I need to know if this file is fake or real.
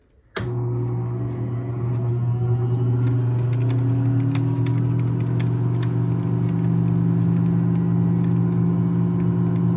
real